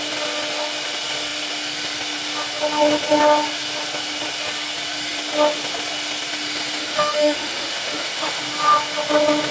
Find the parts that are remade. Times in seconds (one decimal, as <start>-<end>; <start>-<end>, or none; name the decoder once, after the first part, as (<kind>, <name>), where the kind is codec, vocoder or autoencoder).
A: 6.8-8.4 (autoencoder, DAC-VAE)